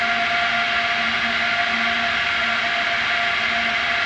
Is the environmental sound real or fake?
real